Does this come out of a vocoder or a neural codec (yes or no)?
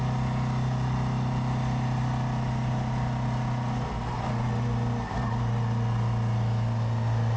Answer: no